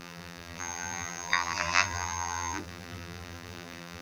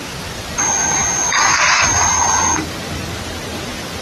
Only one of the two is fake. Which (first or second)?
first